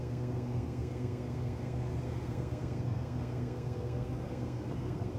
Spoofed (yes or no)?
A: yes